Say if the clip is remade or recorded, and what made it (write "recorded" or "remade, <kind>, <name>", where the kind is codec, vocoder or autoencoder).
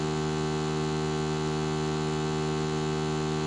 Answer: recorded